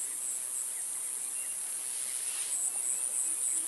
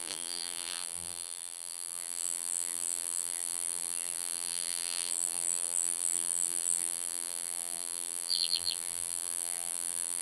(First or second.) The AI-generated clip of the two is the second